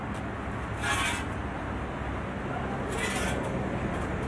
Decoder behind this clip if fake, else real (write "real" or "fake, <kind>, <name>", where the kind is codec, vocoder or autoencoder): real